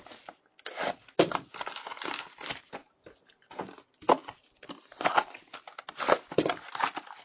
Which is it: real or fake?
real